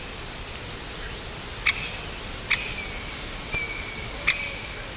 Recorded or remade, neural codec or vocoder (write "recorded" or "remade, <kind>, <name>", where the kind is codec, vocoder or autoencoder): recorded